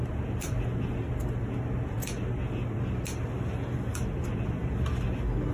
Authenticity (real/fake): real